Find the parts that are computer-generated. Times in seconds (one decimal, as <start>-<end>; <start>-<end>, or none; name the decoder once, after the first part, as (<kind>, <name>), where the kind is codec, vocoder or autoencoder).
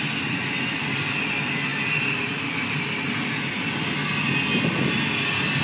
none